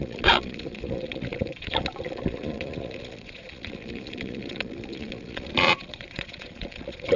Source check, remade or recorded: remade